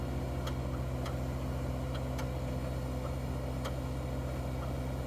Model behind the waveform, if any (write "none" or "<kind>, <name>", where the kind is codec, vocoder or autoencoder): none